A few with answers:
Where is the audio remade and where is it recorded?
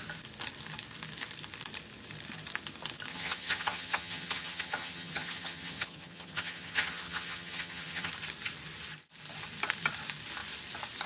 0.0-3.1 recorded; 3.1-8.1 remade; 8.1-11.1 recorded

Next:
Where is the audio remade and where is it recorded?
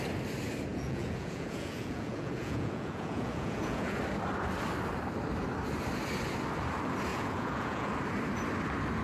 0.0-0.7 recorded; 0.7-4.0 remade; 4.0-7.1 recorded; 7.1-7.9 remade; 7.9-9.0 recorded